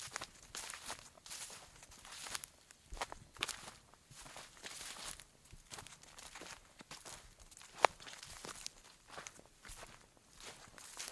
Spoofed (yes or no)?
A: no